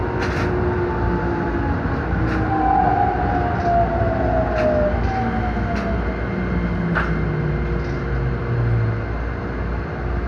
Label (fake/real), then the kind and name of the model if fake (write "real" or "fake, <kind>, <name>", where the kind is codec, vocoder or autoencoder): real